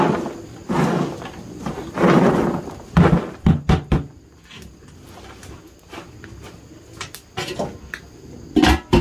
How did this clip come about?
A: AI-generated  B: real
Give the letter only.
B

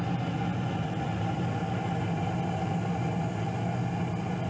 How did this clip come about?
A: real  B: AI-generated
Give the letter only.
A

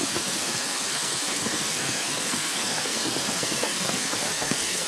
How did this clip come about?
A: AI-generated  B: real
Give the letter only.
A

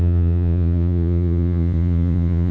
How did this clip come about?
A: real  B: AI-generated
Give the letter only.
B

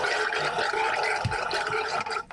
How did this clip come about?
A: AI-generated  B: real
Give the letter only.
A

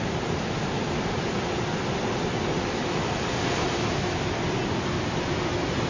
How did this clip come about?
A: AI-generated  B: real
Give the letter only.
B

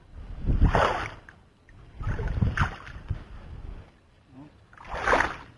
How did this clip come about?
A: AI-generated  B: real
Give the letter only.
B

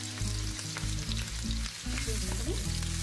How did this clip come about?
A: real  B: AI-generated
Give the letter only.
A